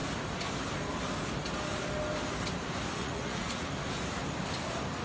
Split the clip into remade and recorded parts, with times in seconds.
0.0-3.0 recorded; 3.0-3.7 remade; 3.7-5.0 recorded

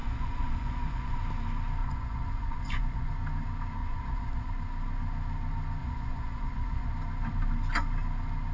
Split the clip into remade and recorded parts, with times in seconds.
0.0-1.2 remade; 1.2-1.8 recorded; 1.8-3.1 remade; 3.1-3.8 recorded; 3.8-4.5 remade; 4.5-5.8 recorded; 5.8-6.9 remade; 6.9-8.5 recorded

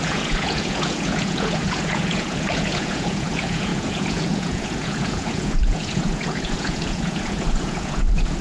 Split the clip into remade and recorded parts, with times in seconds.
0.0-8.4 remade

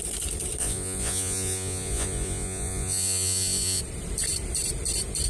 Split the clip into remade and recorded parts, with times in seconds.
0.0-0.6 recorded; 0.6-3.8 remade; 3.8-5.3 recorded